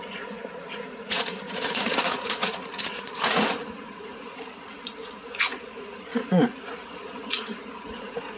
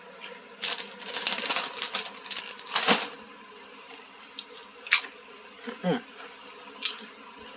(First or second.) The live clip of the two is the second